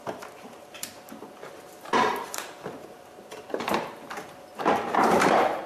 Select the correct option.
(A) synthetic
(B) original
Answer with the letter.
A